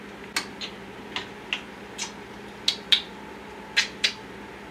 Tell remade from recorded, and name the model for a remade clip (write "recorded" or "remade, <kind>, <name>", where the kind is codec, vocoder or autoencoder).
recorded